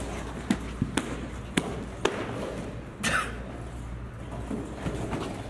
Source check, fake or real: real